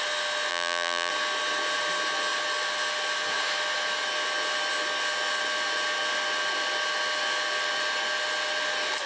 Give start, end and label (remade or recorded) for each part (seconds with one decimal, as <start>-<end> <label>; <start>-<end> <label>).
0.0-0.5 recorded; 0.5-1.1 remade; 1.1-9.1 recorded

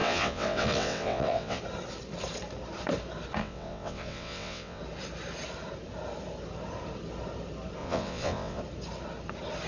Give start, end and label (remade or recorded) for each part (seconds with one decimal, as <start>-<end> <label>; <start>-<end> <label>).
0.0-1.6 remade; 1.6-3.4 recorded; 3.4-4.8 remade; 4.8-7.8 recorded; 7.8-8.6 remade; 8.6-9.7 recorded

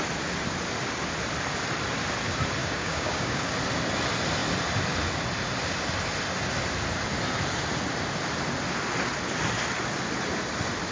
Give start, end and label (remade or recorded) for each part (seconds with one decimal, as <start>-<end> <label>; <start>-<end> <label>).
0.0-2.6 recorded; 2.6-3.5 remade; 3.5-10.9 recorded